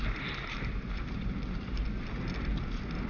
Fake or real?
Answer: real